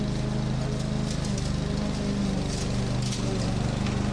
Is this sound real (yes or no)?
yes